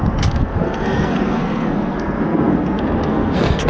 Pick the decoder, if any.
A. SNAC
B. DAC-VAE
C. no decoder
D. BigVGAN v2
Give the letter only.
A